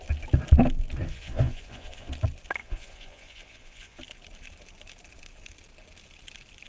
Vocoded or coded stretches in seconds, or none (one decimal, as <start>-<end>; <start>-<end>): 1.1-2.1; 2.6-4.0